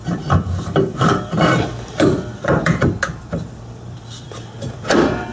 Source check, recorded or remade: remade